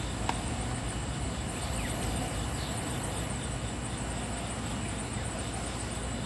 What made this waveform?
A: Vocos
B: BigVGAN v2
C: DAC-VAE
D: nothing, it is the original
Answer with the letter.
D